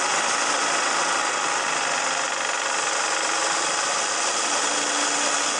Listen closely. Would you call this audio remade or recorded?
recorded